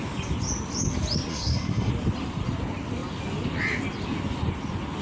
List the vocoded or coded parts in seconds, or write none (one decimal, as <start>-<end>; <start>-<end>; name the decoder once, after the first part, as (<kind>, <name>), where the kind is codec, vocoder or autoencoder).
1.3-1.9 (codec, SNAC)